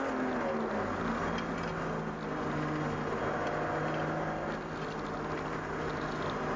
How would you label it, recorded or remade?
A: recorded